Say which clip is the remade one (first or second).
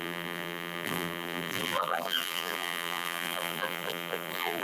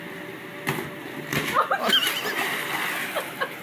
first